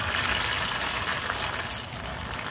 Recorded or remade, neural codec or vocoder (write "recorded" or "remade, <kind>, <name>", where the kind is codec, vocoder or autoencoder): recorded